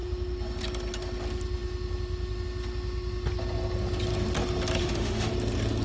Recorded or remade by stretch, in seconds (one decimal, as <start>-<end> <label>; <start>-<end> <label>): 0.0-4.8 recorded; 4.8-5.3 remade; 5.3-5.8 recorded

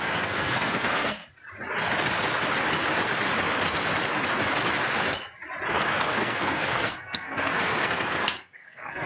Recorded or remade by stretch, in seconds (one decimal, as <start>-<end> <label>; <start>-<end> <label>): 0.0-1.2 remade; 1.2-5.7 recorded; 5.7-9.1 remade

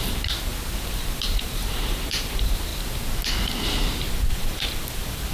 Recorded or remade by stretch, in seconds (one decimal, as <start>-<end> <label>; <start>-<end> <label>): 0.0-0.5 remade; 0.5-1.0 recorded; 1.0-2.7 remade; 2.7-4.1 recorded; 4.1-5.3 remade

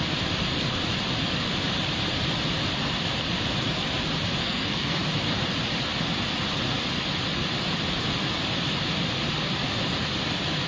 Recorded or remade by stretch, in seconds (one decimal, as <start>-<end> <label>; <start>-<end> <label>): 0.0-4.4 recorded; 4.4-5.0 remade; 5.0-10.7 recorded

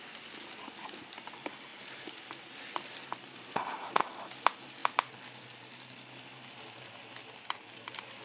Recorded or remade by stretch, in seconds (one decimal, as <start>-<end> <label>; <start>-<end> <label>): 0.0-1.7 recorded; 1.7-3.1 remade; 3.1-8.2 recorded

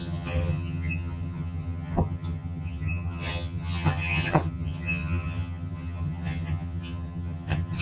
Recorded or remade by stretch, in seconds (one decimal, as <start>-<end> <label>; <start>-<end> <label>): 0.0-7.8 remade

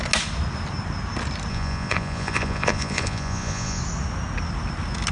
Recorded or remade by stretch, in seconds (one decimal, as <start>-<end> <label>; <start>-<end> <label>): 0.0-1.5 recorded; 1.5-3.8 remade; 3.8-5.1 recorded